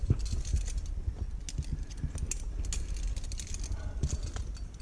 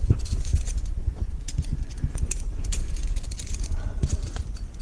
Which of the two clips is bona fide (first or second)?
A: first